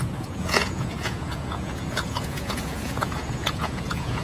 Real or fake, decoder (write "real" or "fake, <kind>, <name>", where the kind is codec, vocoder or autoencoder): fake, vocoder, Vocos